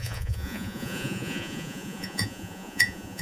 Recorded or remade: remade